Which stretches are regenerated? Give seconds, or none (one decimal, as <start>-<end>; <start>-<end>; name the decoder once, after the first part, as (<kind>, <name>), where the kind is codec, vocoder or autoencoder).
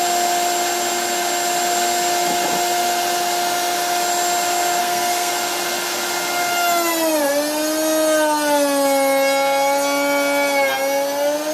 4.8-5.3 (codec, SNAC)